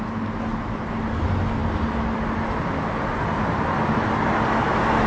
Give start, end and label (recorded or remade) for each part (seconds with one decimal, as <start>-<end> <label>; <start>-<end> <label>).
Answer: 0.0-0.5 recorded; 0.5-1.1 remade; 1.1-1.6 recorded; 1.6-4.6 remade; 4.6-5.1 recorded